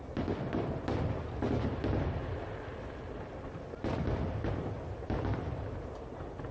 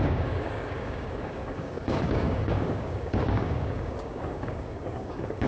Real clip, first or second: first